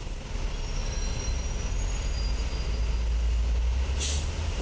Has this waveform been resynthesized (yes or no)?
no